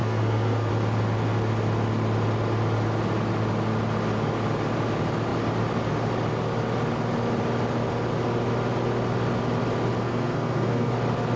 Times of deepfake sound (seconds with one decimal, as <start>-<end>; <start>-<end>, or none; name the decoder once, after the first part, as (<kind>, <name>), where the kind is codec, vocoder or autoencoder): 0.0-0.7 (codec, SNAC); 10.0-10.9